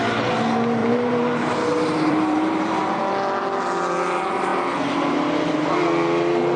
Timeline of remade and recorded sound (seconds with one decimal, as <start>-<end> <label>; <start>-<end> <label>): 0.0-0.8 recorded; 0.8-3.0 remade; 3.0-6.6 recorded